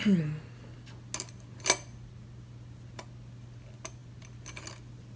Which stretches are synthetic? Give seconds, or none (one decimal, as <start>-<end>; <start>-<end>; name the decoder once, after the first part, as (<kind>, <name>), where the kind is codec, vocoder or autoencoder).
none